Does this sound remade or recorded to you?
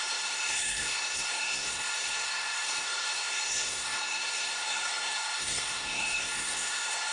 remade